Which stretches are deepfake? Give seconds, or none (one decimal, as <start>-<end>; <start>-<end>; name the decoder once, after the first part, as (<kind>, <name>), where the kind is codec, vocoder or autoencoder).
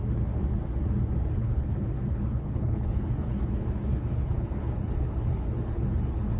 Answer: 0.0-0.4 (codec, HILCodec); 1.4-6.4